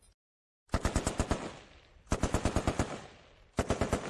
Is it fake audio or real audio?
real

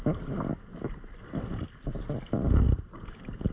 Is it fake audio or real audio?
real